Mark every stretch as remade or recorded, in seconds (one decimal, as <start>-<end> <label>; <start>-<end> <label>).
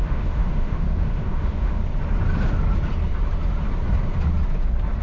0.0-1.8 remade; 1.8-5.0 recorded